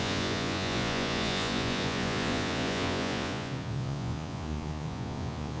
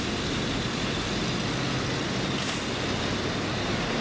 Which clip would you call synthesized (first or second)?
first